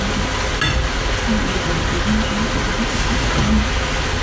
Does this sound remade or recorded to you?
recorded